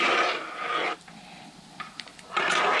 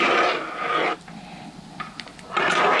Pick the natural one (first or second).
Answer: second